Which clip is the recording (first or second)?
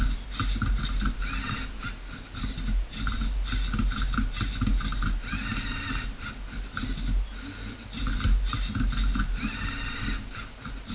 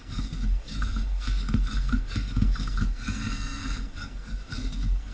first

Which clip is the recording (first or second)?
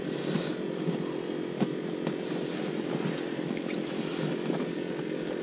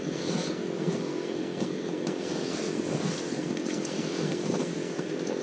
first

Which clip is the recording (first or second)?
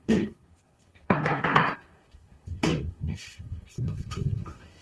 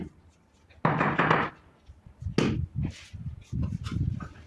second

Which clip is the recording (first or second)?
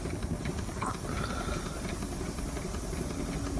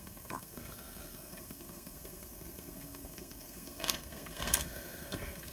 first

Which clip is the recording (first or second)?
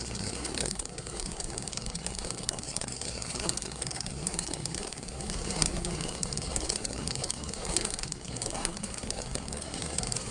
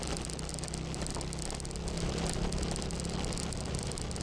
second